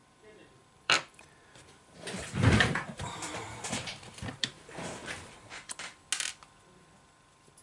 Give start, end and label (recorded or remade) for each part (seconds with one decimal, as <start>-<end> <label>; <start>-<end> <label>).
0.0-5.0 remade; 5.0-7.6 recorded